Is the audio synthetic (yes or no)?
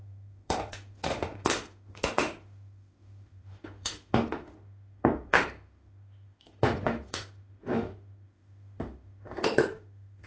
yes